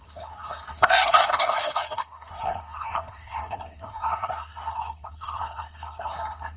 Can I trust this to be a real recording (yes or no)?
no